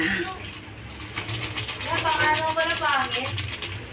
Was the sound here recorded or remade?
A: recorded